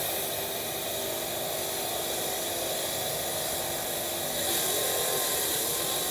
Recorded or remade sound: recorded